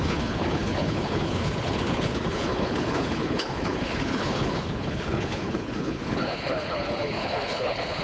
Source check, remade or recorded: remade